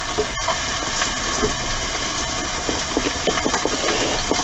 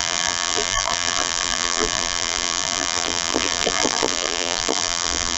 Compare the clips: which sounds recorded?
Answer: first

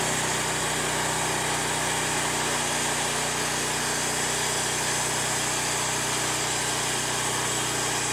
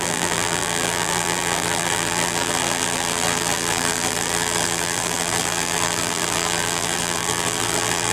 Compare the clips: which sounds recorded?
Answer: first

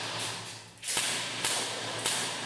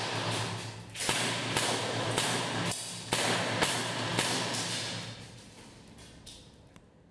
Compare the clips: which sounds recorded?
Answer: first